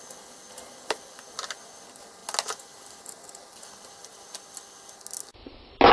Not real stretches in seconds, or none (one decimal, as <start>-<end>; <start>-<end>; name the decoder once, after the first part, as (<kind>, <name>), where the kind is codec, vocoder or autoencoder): none